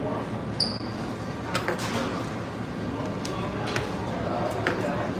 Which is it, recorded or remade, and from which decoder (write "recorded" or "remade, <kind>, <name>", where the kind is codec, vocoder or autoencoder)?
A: recorded